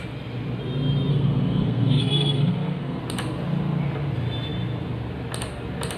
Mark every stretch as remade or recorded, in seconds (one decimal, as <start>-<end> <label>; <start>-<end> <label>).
0.0-1.1 recorded; 1.1-3.0 remade; 3.0-6.0 recorded